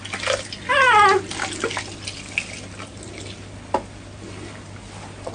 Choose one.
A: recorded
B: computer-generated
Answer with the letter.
A